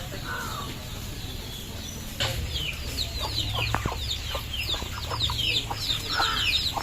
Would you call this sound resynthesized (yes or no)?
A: no